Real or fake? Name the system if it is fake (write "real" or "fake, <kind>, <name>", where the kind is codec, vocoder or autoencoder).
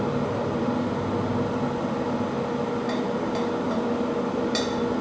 real